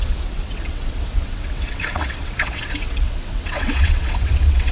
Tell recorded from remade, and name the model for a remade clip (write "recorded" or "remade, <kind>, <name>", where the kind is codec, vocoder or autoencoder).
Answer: remade, vocoder, WaveNeXt